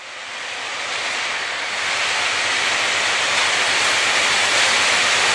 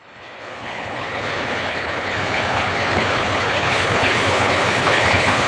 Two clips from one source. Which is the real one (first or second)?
first